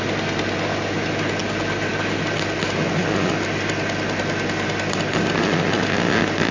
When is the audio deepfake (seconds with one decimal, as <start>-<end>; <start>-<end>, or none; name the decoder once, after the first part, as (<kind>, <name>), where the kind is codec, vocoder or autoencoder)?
none